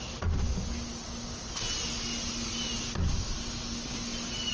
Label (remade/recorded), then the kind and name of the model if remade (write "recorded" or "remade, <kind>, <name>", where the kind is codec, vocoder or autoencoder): recorded